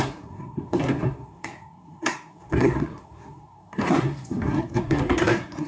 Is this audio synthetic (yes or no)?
yes